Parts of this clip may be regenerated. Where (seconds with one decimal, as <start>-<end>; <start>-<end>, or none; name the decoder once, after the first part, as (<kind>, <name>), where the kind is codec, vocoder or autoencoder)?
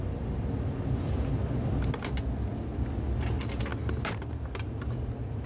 none